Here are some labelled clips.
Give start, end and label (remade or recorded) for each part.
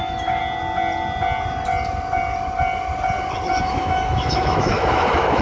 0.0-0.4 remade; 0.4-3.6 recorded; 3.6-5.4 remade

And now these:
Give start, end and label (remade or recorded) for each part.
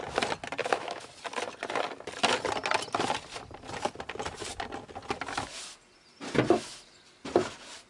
0.0-0.6 recorded; 0.6-1.1 remade; 1.1-7.9 recorded